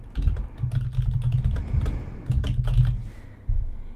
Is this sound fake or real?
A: real